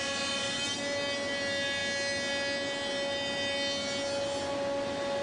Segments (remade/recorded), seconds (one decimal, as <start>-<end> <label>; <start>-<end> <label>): 0.0-5.2 recorded